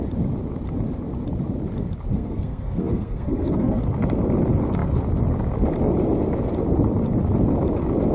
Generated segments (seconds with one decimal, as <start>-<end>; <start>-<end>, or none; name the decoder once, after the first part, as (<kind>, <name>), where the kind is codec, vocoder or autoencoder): 2.1-3.8 (codec, SNAC)